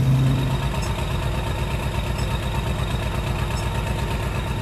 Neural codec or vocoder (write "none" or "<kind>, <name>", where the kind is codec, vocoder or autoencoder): none